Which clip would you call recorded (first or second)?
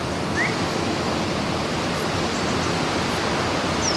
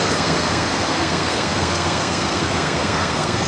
first